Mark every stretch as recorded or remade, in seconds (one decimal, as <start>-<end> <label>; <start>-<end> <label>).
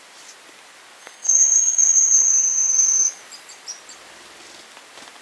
0.0-1.0 recorded; 1.0-3.2 remade; 3.2-5.2 recorded